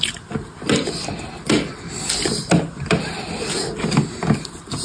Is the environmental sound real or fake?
real